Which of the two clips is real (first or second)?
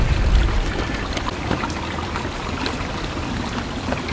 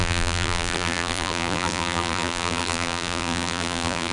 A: first